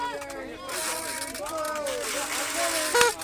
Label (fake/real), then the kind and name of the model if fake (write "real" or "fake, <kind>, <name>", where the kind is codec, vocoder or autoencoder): real